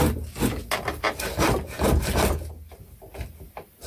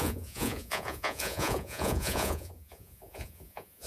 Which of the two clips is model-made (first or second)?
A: second